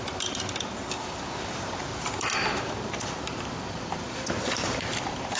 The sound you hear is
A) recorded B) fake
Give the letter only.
B